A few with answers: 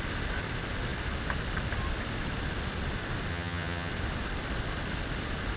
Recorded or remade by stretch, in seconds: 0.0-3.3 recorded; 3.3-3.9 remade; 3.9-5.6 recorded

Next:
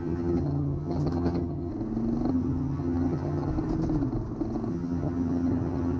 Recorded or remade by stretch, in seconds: 0.0-1.7 remade; 1.7-2.3 recorded; 2.3-3.5 remade; 3.5-4.7 recorded; 4.7-6.0 remade

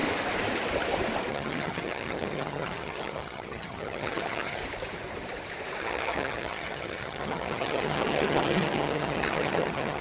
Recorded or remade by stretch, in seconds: 0.0-1.3 recorded; 1.3-4.6 remade; 4.6-5.8 recorded; 5.8-10.0 remade

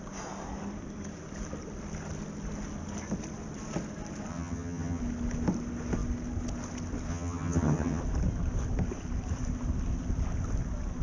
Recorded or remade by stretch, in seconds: 0.0-4.3 recorded; 4.3-5.0 remade; 5.0-7.1 recorded; 7.1-8.0 remade; 8.0-11.0 recorded

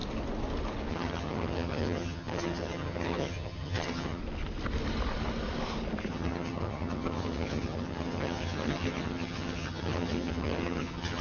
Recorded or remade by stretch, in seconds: 0.0-0.9 recorded; 0.9-4.2 remade; 4.2-6.1 recorded; 6.1-11.2 remade

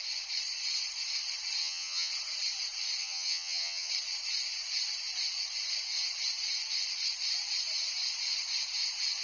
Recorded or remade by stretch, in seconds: 0.0-1.6 recorded; 1.6-2.1 remade; 2.1-3.0 recorded; 3.0-3.9 remade; 3.9-9.2 recorded